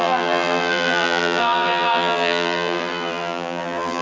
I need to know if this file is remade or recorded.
remade